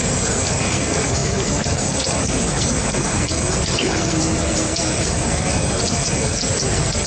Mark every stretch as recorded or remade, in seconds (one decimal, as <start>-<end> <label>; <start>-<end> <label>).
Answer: 0.0-7.1 remade